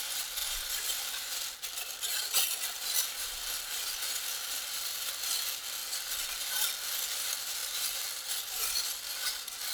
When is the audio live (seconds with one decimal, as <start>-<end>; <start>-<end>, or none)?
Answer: 0.0-0.4; 5.1-7.6; 9.1-9.7